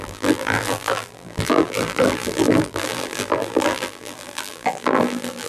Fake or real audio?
fake